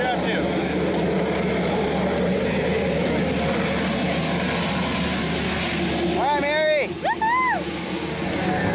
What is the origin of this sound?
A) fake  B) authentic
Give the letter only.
B